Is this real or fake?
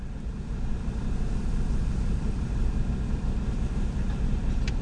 real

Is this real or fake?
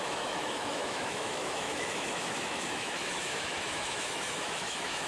fake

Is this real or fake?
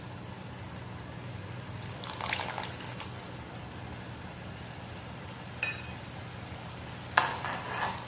real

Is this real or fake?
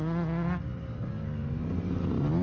real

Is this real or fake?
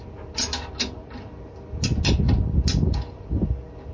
real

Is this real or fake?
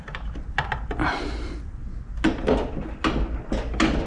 real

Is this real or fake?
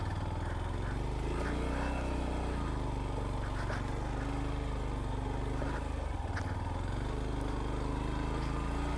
real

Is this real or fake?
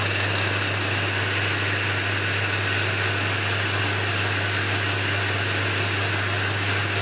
real